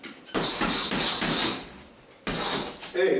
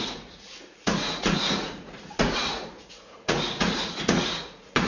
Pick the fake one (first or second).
second